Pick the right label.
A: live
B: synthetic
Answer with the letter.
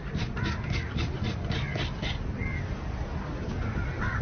A